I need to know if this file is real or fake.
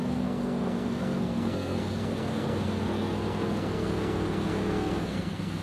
fake